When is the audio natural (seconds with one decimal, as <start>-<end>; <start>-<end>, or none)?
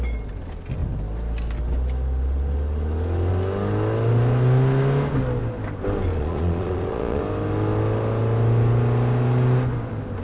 0.0-6.1; 7.2-10.2